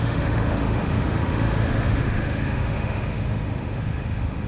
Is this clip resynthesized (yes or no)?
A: yes